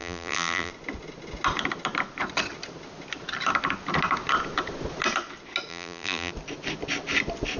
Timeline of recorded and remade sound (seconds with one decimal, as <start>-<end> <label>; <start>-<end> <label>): 0.0-0.7 remade; 0.7-5.7 recorded; 5.7-6.3 remade; 6.3-7.6 recorded